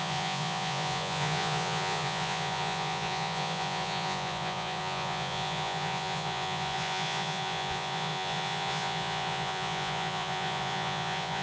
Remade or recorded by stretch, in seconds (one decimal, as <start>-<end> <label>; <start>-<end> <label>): 0.0-11.4 remade